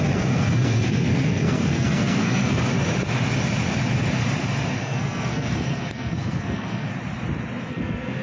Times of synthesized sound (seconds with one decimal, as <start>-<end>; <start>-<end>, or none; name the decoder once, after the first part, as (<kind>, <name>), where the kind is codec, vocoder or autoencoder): 0.0-2.4 (codec, SNAC); 4.8-6.9; 7.7-8.2